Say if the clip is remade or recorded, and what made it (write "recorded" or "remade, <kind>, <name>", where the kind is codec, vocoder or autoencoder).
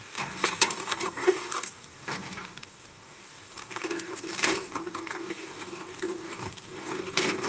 remade, codec, DAC